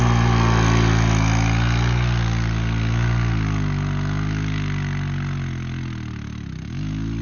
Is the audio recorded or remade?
recorded